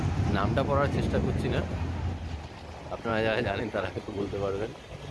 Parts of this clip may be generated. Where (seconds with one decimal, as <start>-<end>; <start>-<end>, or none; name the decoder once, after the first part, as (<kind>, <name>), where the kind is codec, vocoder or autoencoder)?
3.1-3.6 (autoencoder, DAC-VAE)